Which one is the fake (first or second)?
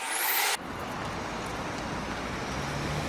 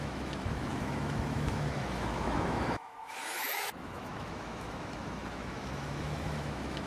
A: second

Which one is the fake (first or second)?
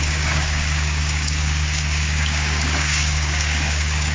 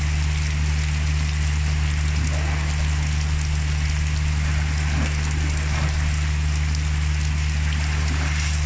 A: first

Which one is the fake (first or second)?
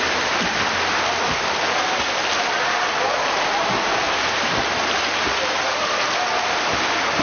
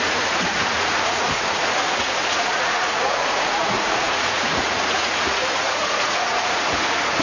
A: second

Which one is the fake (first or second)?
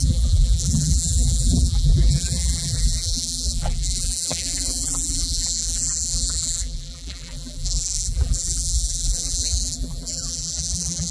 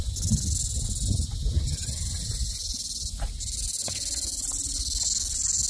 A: first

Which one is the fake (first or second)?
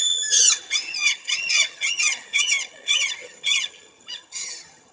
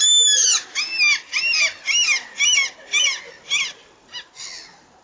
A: first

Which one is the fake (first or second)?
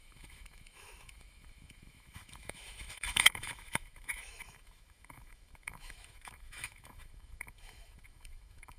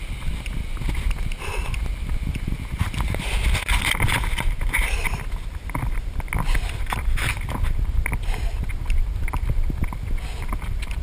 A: first